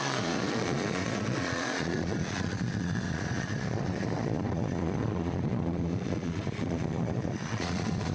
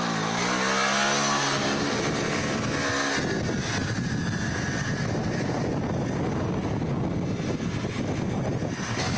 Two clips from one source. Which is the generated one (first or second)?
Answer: first